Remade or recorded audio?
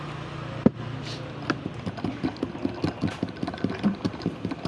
recorded